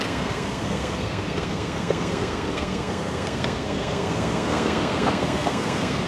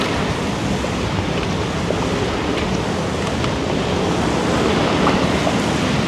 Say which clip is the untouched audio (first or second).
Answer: second